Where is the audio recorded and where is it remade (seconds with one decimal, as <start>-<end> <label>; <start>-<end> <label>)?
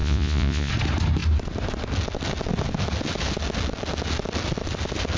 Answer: 0.0-0.7 remade; 0.7-5.2 recorded